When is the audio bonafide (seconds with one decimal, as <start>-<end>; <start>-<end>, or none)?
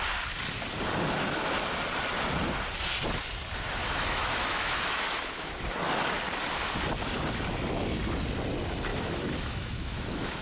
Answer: 0.0-3.8; 5.5-8.9